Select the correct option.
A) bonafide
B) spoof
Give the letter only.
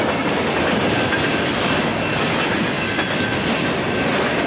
A